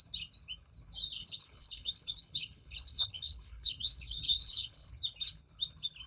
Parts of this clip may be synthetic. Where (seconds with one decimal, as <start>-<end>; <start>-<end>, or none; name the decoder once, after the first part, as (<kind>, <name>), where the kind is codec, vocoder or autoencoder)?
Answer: 1.2-4.9 (codec, HILCodec)